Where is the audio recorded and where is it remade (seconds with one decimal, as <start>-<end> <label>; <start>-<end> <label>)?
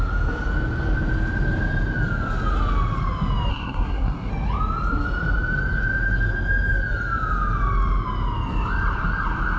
0.0-3.5 recorded; 3.5-4.3 remade; 4.3-9.6 recorded